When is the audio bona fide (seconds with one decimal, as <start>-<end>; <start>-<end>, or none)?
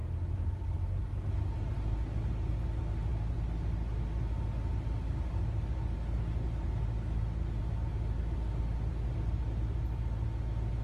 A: 0.0-10.8